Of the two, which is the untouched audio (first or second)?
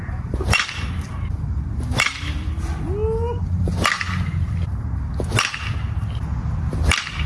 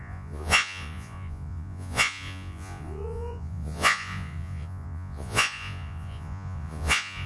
first